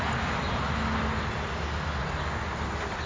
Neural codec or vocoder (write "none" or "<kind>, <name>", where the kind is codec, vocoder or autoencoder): none